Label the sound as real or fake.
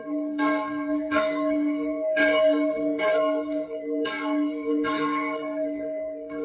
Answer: fake